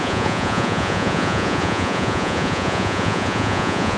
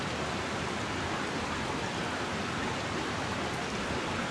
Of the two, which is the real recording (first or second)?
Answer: second